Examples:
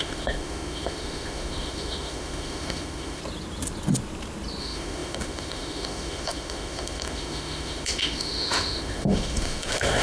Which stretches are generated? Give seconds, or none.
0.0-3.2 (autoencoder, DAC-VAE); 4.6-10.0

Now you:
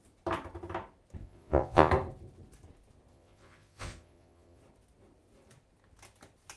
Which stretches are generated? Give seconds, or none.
1.2-1.9 (vocoder, Vocos); 3.1-4.6

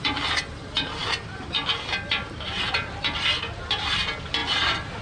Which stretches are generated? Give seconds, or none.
none